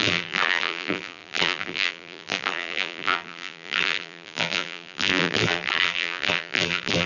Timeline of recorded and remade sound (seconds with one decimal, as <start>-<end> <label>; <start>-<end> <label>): 0.0-7.1 remade